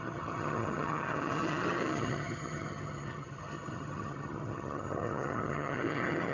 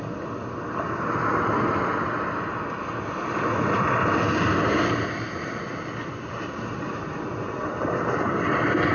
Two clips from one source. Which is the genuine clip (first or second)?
second